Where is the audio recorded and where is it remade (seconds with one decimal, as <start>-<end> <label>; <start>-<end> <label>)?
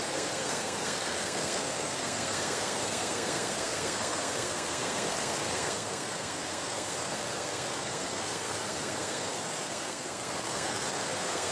0.0-11.5 remade